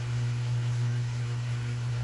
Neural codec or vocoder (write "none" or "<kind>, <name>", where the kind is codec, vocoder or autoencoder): codec, SNAC